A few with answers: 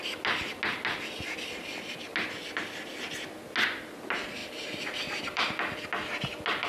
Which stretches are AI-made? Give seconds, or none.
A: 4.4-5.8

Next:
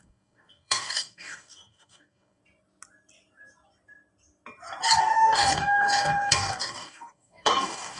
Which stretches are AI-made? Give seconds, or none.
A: 0.0-2.4; 5.0-8.0

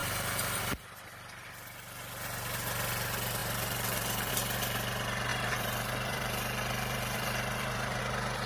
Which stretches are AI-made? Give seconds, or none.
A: 0.0-0.6; 3.4-4.3; 5.3-8.0

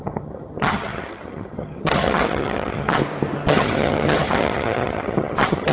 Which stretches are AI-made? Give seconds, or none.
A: 0.0-3.0; 3.5-5.7